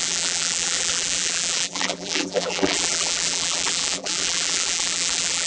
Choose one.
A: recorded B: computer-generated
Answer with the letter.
B